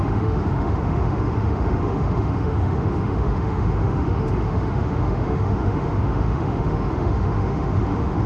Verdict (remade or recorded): remade